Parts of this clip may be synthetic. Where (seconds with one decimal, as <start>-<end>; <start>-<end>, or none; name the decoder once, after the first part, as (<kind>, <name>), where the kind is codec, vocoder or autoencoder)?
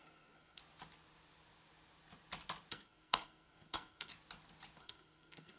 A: 0.0-0.6 (codec, SNAC); 2.7-4.1; 4.8-5.6